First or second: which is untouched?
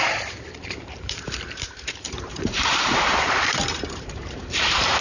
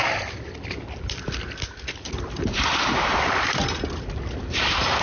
second